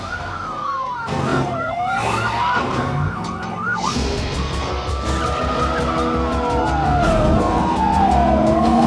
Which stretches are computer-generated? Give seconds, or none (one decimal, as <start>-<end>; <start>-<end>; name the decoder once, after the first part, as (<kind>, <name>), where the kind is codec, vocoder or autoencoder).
0.0-4.9 (codec, SNAC); 6.6-8.9

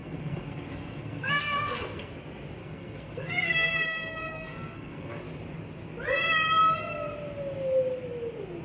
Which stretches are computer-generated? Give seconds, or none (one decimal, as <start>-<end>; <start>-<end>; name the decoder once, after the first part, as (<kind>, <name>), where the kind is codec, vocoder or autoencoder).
0.0-2.1 (codec, SNAC); 2.6-5.2